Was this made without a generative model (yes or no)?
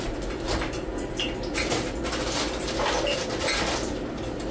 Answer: yes